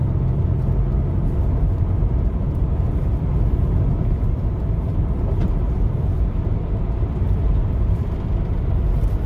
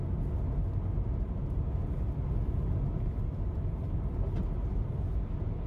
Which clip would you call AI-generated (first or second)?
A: first